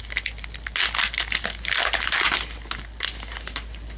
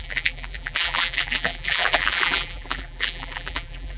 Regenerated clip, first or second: second